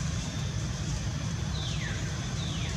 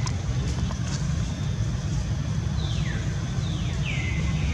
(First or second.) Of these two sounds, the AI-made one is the first